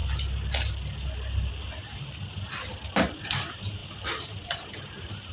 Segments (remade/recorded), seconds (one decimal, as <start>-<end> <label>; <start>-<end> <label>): 0.0-3.2 recorded; 3.2-5.3 remade